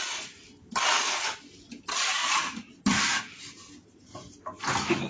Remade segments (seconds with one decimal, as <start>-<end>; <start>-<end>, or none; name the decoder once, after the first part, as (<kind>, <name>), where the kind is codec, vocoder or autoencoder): 2.2-3.1 (vocoder, BigVGAN v2)